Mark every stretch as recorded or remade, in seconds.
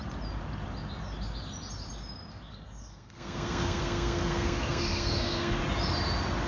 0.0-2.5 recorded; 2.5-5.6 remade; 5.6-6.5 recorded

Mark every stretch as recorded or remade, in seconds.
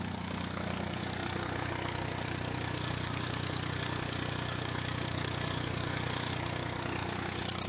0.0-7.7 remade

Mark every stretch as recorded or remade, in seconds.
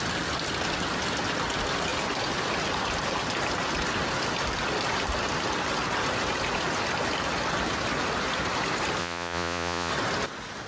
0.0-9.0 recorded; 9.0-9.9 remade; 9.9-10.7 recorded